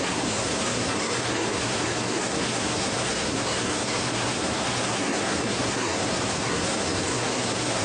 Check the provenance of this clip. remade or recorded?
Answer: remade